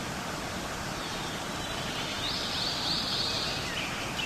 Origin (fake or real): fake